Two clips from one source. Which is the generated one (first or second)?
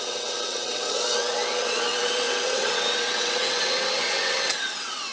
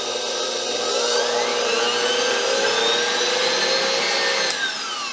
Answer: first